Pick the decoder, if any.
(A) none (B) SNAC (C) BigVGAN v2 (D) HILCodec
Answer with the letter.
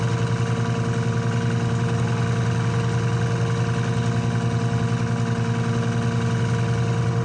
A